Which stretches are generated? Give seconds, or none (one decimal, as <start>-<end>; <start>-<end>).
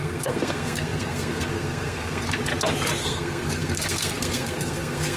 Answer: 0.0-2.4; 3.0-5.2